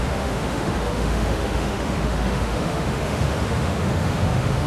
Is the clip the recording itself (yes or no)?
no